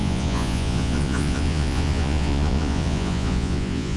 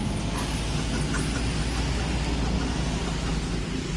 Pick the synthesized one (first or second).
first